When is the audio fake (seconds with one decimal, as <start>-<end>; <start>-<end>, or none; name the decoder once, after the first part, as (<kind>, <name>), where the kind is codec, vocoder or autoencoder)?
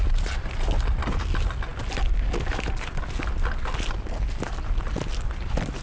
none